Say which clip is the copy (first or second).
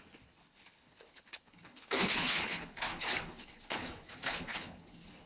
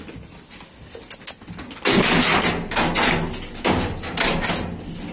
first